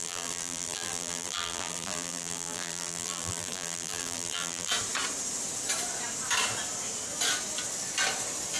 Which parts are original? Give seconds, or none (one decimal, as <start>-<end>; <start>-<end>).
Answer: 4.7-8.6